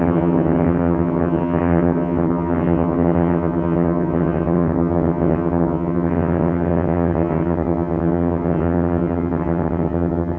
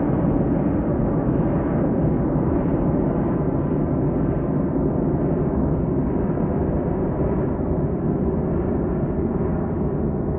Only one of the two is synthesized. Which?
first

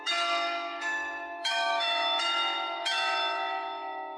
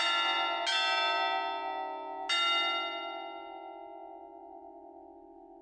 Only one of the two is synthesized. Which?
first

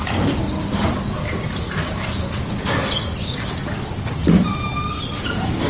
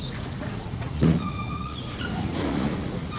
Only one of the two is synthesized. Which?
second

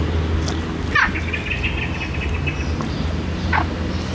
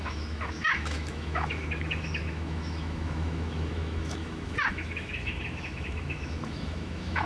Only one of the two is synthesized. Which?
second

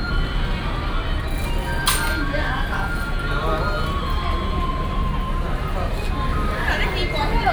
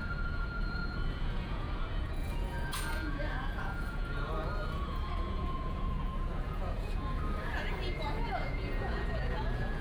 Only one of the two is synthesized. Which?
second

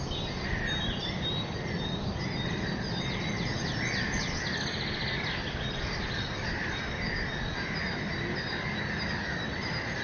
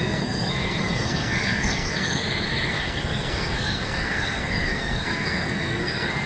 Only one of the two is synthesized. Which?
second